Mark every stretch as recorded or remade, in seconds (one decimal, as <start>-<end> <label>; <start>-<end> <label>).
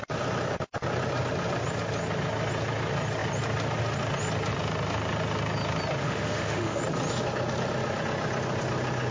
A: 0.0-6.0 recorded; 6.0-6.8 remade; 6.8-9.1 recorded